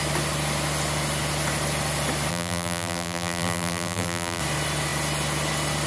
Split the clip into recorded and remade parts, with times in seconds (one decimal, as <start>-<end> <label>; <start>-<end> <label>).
0.0-2.3 recorded; 2.3-4.4 remade; 4.4-5.9 recorded